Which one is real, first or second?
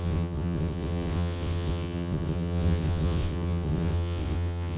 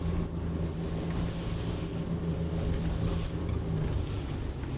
second